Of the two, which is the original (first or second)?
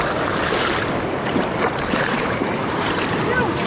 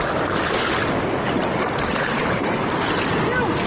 second